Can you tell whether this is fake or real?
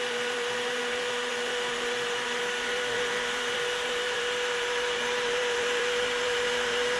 fake